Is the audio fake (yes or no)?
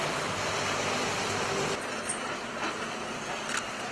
no